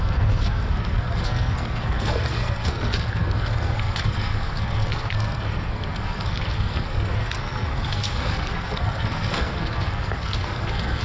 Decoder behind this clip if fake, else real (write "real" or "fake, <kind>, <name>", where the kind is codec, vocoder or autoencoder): fake, codec, SNAC